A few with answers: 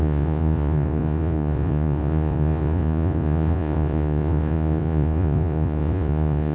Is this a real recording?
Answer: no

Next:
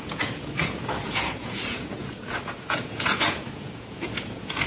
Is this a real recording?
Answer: no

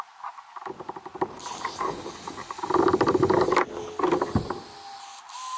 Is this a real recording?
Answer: yes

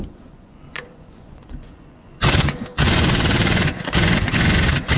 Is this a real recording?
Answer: no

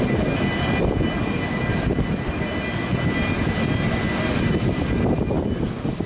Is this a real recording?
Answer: yes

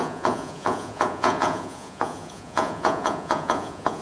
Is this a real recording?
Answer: no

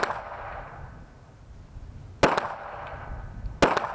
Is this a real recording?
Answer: yes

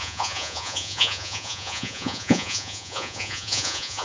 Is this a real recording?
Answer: no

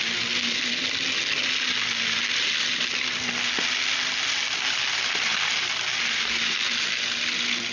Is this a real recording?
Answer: yes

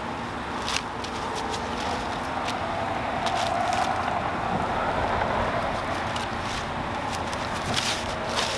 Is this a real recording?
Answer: yes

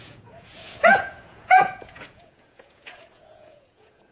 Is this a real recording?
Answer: no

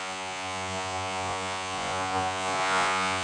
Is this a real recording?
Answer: no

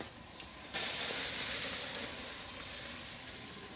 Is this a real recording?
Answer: yes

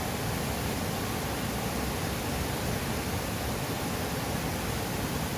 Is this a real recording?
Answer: yes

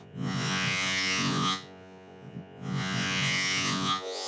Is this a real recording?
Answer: no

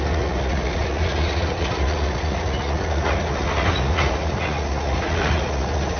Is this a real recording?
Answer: no